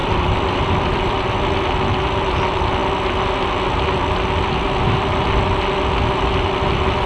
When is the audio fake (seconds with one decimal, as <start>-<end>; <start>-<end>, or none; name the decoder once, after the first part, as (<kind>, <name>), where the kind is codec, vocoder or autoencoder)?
0.0-1.2 (vocoder, BigVGAN v2)